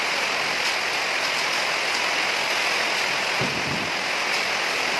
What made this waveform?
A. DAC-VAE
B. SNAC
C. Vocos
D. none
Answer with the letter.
D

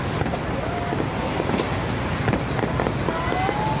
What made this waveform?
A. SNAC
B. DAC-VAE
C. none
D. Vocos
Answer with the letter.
C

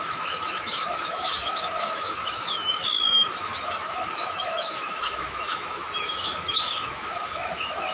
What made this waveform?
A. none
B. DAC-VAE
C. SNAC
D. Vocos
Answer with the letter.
B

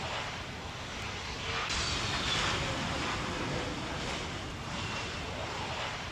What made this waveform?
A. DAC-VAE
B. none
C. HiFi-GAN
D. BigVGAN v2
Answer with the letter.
B